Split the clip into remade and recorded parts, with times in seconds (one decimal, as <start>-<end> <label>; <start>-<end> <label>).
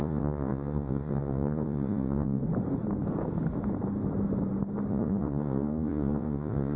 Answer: 0.0-2.4 remade; 2.4-4.9 recorded; 4.9-6.8 remade